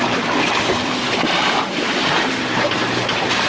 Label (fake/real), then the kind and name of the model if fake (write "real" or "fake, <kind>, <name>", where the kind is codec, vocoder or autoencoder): fake, vocoder, BigVGAN v2